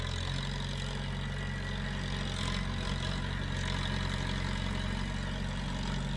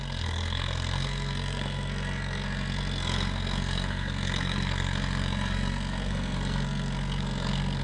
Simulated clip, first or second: second